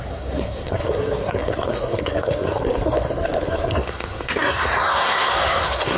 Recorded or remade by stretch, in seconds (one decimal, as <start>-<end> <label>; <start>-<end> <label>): 0.0-6.0 remade